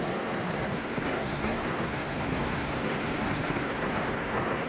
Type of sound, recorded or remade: remade